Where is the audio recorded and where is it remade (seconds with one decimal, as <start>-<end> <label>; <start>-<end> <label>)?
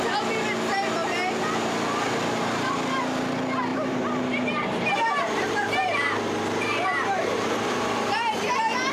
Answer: 0.0-3.7 recorded; 3.7-8.4 remade; 8.4-8.9 recorded